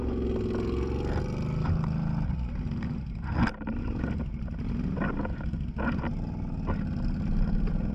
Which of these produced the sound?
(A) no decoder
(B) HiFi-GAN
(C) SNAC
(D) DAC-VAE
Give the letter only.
A